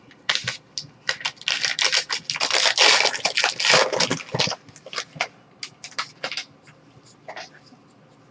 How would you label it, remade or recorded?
recorded